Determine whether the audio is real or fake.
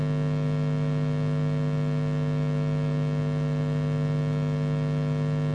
real